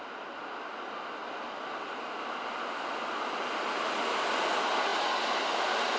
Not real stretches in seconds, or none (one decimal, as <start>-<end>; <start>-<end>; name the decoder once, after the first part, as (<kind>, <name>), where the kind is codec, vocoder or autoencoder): none